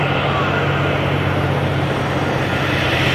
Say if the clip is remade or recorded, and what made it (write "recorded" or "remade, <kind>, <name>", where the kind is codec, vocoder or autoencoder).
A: recorded